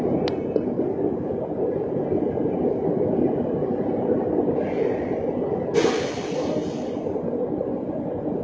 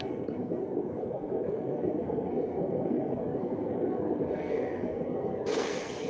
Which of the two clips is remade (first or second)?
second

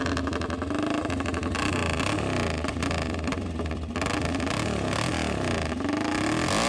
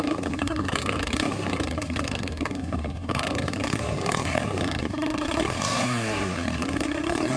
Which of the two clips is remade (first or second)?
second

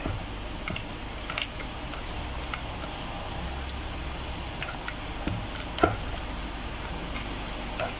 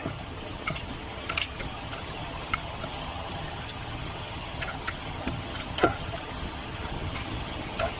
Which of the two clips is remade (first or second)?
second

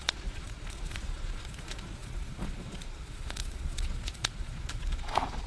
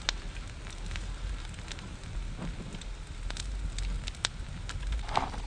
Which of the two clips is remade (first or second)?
first